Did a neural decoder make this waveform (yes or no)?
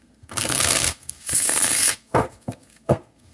yes